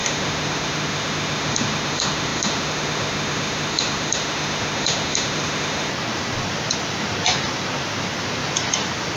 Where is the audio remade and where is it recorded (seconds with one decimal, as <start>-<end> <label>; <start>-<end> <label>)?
0.0-5.9 remade; 5.9-9.2 recorded